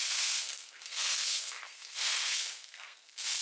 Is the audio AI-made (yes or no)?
yes